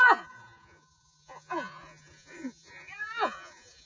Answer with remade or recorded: remade